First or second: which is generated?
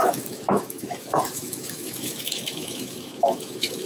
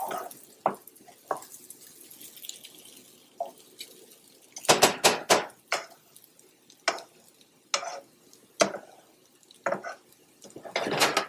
first